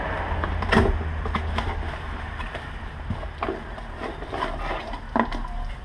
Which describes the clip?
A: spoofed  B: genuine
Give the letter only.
B